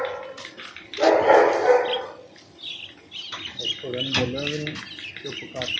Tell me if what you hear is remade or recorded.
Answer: recorded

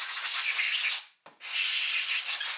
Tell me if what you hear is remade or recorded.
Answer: recorded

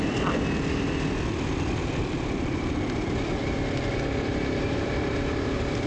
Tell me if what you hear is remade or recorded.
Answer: remade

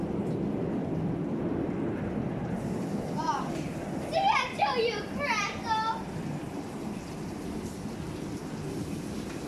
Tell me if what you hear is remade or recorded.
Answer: remade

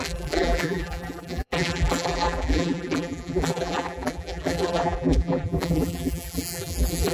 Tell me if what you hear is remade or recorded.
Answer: remade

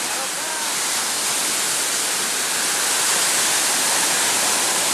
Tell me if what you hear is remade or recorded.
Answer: recorded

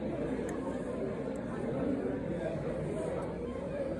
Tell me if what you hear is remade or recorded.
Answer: remade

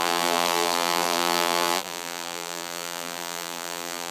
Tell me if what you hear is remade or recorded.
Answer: remade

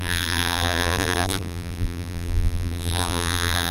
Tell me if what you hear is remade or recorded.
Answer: remade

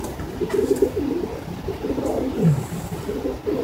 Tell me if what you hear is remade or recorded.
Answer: recorded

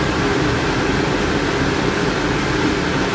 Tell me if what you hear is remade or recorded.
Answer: recorded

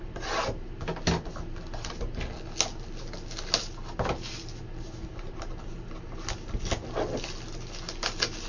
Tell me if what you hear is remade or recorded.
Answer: recorded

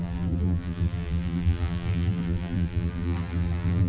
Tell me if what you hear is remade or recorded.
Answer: remade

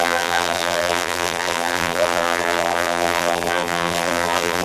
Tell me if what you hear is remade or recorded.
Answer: remade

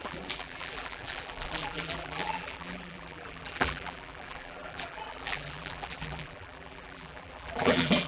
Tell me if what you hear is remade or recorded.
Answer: remade